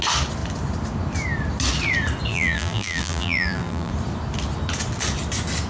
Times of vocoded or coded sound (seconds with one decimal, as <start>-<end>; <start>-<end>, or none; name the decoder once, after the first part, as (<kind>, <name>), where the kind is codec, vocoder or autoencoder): 2.3-3.9 (vocoder, BigVGAN v2)